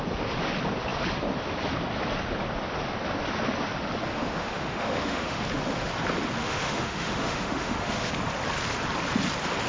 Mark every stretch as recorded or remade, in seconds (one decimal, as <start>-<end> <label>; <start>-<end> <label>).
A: 0.0-4.1 recorded; 4.1-5.4 remade; 5.4-6.4 recorded; 6.4-8.1 remade; 8.1-9.7 recorded